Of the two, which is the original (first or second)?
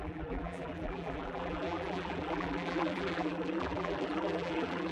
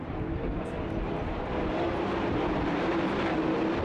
second